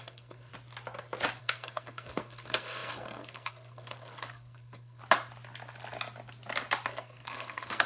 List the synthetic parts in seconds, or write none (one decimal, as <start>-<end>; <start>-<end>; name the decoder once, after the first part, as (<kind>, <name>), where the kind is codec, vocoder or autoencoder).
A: 0.0-0.5 (codec, SNAC); 1.4-5.0; 6.9-7.9